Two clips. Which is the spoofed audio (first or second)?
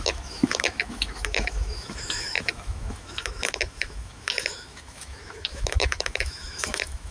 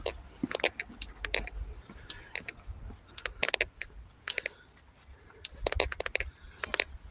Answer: first